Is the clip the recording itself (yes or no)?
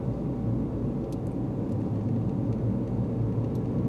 yes